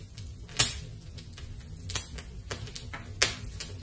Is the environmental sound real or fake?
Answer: real